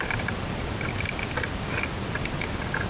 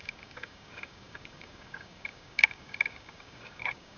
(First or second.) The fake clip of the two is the second